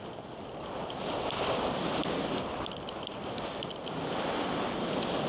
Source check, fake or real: real